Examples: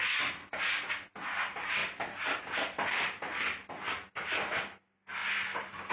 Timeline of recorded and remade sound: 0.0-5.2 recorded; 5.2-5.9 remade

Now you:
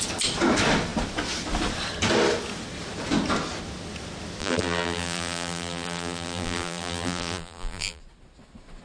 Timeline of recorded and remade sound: 0.0-4.4 recorded; 4.4-8.0 remade; 8.0-8.8 recorded

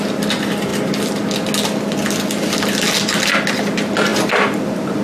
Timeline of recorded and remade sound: 0.0-0.7 remade; 0.7-3.6 recorded; 3.6-5.0 remade

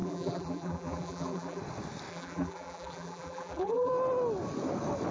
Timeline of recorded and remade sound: 0.0-1.6 remade; 1.6-2.1 recorded; 2.1-3.9 remade; 3.9-5.1 recorded

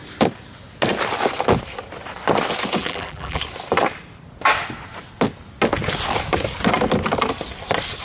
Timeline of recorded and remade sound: 0.0-2.8 recorded; 2.8-3.4 remade; 3.4-8.0 recorded